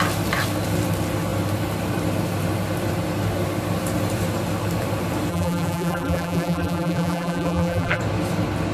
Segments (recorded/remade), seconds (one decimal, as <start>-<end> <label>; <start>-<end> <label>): 0.0-5.3 recorded; 5.3-8.0 remade; 8.0-8.7 recorded